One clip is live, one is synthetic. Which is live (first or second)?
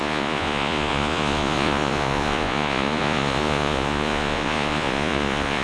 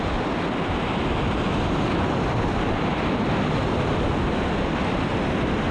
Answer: second